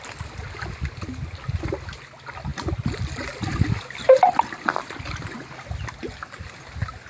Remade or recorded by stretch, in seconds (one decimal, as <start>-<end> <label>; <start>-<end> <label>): 0.0-7.1 recorded